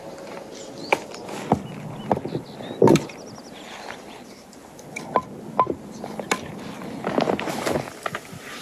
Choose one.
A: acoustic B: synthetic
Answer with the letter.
A